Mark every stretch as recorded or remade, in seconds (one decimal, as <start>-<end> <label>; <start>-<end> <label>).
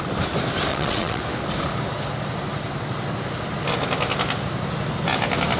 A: 0.0-0.7 recorded; 0.7-1.2 remade; 1.2-5.6 recorded